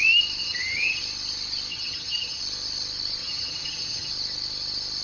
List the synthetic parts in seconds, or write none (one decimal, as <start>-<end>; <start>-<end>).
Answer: 0.4-1.0; 1.7-2.4; 3.2-4.1